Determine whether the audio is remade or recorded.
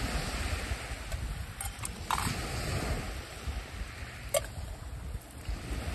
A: recorded